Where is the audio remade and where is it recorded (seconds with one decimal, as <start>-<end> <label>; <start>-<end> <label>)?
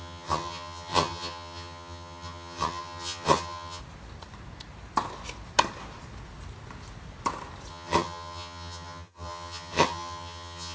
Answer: 0.0-3.8 remade; 3.8-7.7 recorded; 7.7-10.7 remade